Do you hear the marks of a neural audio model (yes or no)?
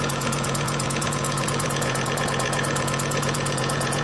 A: yes